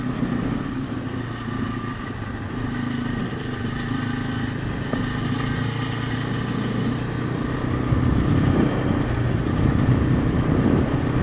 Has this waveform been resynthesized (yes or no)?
no